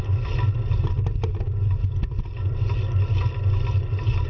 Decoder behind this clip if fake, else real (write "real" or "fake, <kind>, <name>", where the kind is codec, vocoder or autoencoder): real